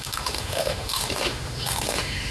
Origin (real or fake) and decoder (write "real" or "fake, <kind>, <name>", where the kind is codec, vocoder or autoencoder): fake, autoencoder, DAC-VAE